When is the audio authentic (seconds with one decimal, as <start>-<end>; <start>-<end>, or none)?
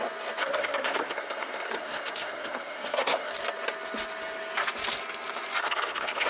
0.0-0.4; 3.3-5.6